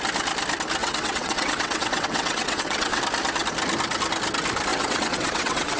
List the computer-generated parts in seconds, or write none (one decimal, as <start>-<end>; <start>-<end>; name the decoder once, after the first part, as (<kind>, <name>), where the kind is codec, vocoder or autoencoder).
0.8-3.0 (vocoder, WaveNeXt); 4.7-5.8

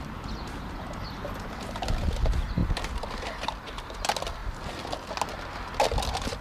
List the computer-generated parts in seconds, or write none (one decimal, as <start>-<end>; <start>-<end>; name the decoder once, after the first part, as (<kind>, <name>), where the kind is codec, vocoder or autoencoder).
none

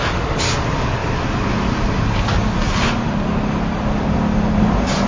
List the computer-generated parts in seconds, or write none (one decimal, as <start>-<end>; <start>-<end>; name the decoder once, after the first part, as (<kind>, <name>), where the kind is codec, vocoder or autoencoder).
none

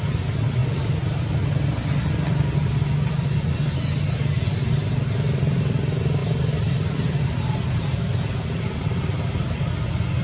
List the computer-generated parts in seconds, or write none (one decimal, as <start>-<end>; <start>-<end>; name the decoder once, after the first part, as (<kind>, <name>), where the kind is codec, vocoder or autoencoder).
0.6-1.2 (vocoder, BigVGAN v2); 6.2-9.0